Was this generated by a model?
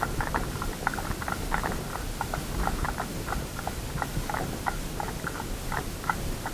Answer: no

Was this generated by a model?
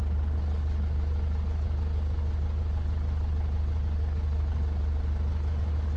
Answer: no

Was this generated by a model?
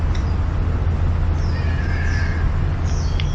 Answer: no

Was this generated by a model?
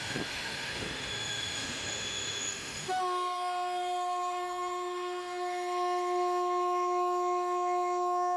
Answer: yes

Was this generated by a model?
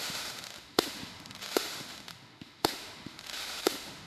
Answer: yes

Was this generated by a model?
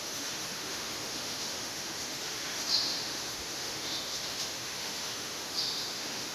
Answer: yes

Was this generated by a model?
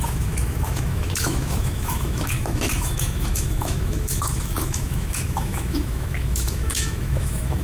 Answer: yes